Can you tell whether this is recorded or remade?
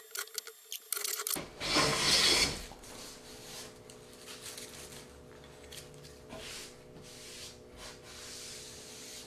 recorded